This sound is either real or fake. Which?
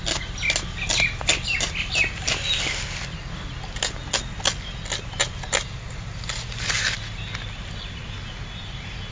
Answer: real